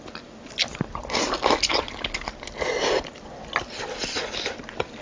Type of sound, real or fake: real